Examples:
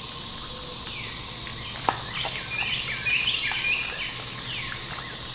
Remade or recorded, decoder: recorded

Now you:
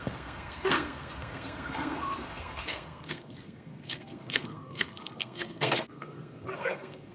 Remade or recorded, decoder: remade, codec, SNAC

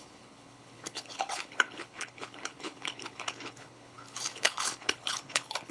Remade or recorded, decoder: remade, codec, HILCodec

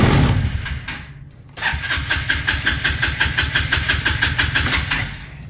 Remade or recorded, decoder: recorded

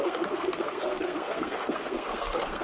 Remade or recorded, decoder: remade, codec, SNAC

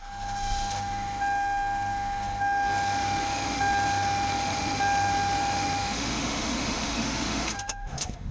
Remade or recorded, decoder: remade, autoencoder, DAC-VAE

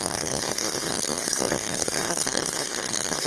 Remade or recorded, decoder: remade, codec, SNAC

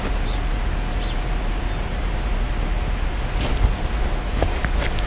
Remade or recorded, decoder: recorded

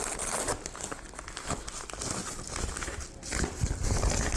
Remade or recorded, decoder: recorded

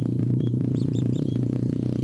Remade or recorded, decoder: remade, vocoder, Vocos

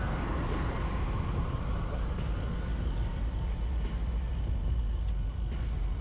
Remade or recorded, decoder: recorded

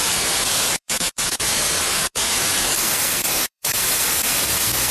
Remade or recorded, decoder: remade, codec, SNAC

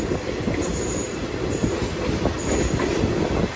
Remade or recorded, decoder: recorded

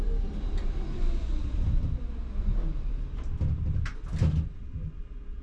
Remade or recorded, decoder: recorded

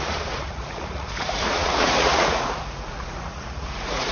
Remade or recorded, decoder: remade, vocoder, Vocos